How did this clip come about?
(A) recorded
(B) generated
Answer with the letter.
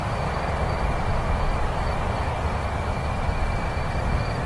A